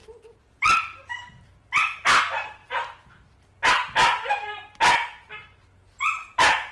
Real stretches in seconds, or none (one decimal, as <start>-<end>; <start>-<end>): 0.0-6.7